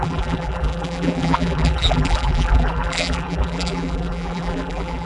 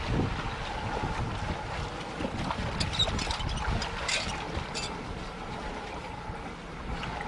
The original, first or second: second